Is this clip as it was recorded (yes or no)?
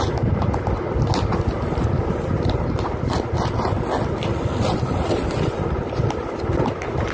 yes